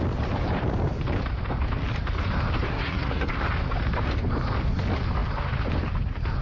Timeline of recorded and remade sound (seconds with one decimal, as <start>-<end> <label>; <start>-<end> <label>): 0.0-2.7 recorded; 2.7-3.3 remade; 3.3-6.4 recorded